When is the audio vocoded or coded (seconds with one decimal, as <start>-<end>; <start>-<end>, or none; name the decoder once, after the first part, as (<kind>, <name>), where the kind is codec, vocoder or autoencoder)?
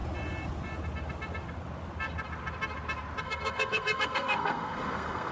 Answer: 3.2-5.3 (codec, SNAC)